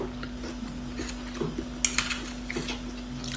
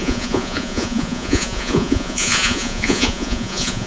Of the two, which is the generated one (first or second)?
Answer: second